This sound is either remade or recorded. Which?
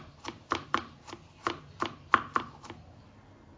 recorded